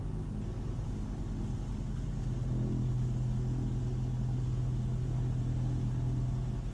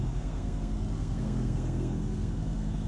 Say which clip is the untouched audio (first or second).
first